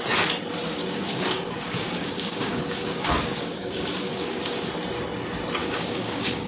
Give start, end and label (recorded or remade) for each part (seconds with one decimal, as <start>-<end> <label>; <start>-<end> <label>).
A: 0.0-0.8 recorded; 0.8-4.7 remade; 4.7-5.6 recorded; 5.6-6.5 remade

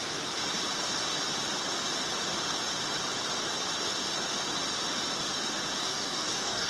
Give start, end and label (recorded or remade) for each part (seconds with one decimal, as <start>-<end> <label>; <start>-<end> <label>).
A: 0.0-5.8 recorded; 5.8-6.7 remade

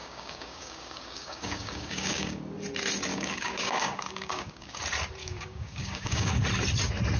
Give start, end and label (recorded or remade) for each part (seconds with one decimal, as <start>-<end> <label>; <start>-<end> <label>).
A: 0.0-2.4 remade; 2.4-3.1 recorded; 3.1-4.8 remade; 4.8-5.2 recorded; 5.2-6.4 remade; 6.4-7.2 recorded